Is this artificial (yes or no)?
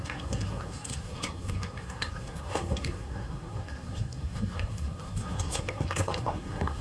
yes